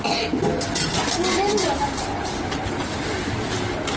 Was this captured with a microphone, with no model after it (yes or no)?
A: yes